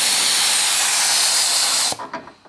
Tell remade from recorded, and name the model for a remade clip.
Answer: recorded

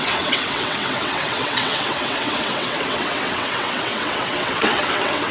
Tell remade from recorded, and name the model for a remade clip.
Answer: remade, vocoder, WaveNeXt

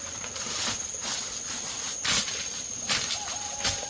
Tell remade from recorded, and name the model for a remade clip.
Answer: recorded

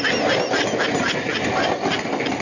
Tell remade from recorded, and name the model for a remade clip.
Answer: recorded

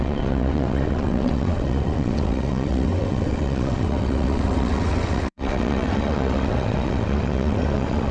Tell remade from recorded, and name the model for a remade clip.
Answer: remade, vocoder, WaveNeXt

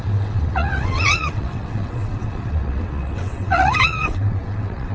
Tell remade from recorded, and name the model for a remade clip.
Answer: remade, vocoder, WaveNeXt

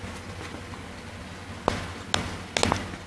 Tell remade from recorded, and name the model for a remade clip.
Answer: recorded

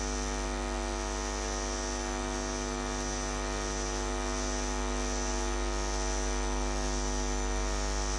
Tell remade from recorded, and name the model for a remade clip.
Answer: recorded